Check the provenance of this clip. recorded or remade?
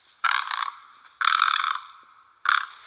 recorded